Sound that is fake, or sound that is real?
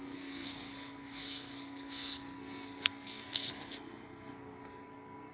fake